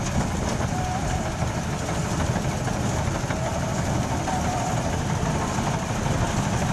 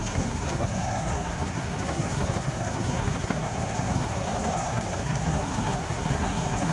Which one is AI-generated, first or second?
second